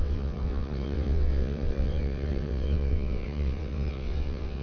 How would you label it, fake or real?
fake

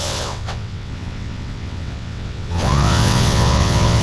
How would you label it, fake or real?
fake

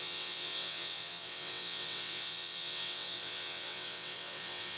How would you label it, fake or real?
fake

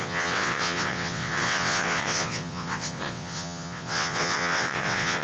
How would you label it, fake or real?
fake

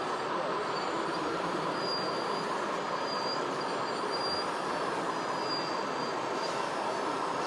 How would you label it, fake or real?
real